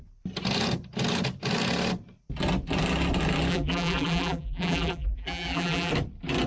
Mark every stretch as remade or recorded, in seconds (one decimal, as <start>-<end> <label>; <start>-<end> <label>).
0.0-3.5 recorded; 3.5-5.9 remade; 5.9-6.5 recorded